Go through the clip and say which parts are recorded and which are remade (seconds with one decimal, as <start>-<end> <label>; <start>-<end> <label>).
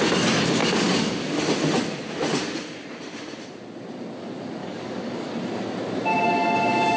0.0-0.6 recorded; 0.6-1.4 remade; 1.4-4.6 recorded; 4.6-5.3 remade; 5.3-6.1 recorded; 6.1-7.0 remade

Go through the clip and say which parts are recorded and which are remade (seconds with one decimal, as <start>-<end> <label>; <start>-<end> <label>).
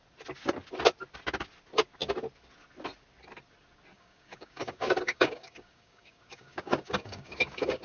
0.0-3.9 recorded; 3.9-7.8 remade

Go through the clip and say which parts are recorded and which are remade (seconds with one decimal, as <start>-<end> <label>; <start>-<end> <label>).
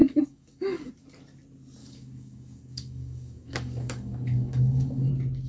0.0-0.9 remade; 0.9-1.8 recorded; 1.8-5.1 remade; 5.1-5.5 recorded